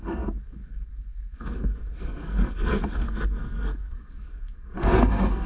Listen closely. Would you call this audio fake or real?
fake